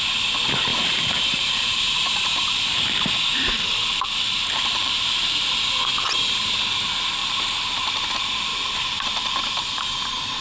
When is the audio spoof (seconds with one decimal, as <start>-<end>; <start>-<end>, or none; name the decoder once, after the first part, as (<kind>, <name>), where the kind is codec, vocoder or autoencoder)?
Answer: 0.7-5.6 (vocoder, BigVGAN v2); 8.5-10.4